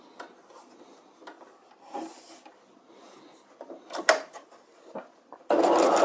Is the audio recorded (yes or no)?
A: yes